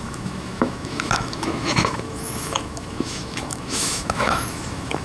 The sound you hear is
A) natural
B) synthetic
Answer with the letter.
B